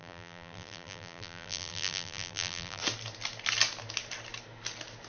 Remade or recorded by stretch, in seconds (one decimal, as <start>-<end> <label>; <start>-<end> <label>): 0.0-2.8 remade; 2.8-5.1 recorded